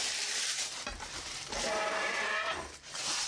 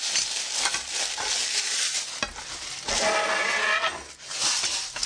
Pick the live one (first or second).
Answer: second